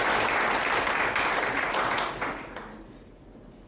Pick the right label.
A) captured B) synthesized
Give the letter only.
A